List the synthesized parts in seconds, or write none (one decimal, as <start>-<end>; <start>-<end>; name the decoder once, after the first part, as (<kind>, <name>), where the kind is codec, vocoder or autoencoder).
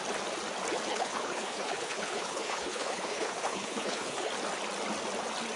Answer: 0.9-4.3 (codec, HILCodec)